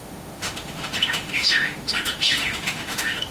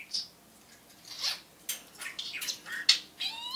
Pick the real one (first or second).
second